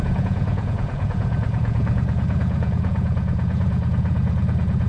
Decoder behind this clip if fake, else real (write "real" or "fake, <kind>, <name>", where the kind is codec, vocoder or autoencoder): fake, vocoder, Vocos